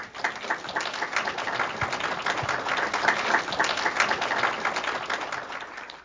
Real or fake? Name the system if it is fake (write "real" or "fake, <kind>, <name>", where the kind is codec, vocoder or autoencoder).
real